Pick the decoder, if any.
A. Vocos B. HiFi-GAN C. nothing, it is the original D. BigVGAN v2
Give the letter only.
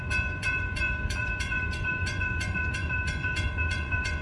A